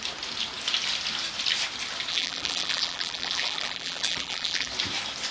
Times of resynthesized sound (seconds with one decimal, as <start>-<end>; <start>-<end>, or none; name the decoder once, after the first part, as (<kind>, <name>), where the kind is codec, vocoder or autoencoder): 2.1-4.7 (vocoder, BigVGAN v2)